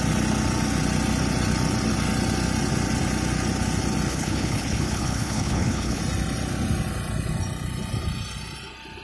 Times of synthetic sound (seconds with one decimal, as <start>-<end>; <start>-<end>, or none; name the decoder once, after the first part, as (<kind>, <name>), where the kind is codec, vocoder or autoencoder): 4.1-6.0 (codec, HILCodec)